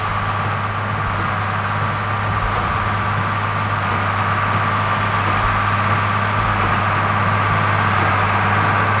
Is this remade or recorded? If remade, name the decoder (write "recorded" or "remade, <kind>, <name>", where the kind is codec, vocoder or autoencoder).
recorded